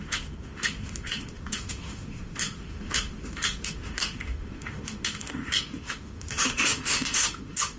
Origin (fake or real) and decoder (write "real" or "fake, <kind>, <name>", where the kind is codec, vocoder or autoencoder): fake, autoencoder, DAC-VAE